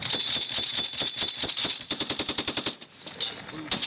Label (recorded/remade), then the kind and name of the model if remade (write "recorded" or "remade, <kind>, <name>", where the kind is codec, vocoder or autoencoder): recorded